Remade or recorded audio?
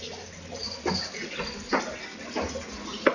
recorded